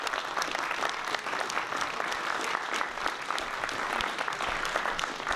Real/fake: real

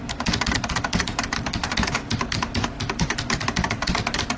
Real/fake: fake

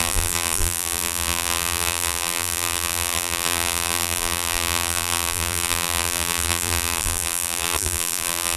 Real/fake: fake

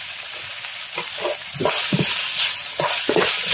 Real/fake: real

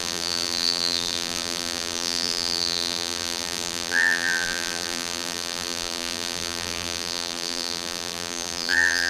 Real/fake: fake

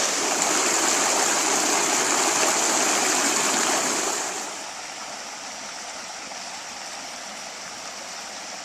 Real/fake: fake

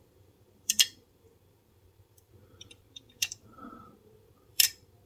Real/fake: fake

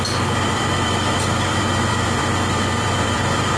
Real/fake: fake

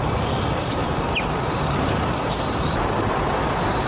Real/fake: fake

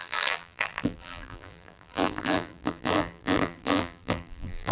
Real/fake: fake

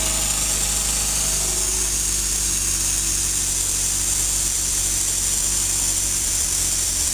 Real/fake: real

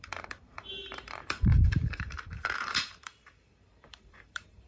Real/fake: fake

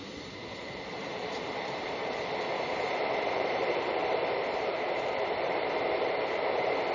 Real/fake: fake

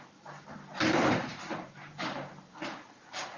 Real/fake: fake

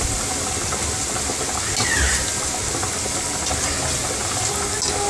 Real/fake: real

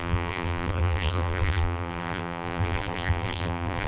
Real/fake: fake